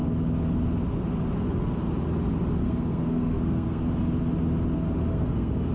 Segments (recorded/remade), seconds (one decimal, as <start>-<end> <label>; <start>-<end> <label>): 0.0-2.6 recorded; 2.6-3.8 remade; 3.8-5.1 recorded; 5.1-5.7 remade